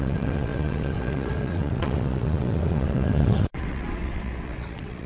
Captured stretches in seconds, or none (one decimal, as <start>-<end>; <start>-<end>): none